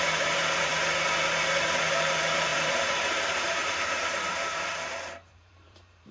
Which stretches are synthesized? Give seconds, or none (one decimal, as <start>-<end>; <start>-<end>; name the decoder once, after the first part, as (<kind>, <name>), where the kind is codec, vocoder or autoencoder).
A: 0.0-0.7 (vocoder, BigVGAN v2); 1.9-6.1